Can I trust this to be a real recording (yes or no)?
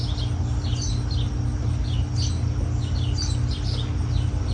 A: yes